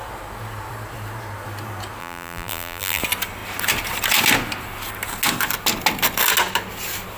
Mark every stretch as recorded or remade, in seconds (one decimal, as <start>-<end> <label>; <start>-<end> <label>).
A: 0.0-2.0 recorded; 2.0-3.0 remade; 3.0-7.2 recorded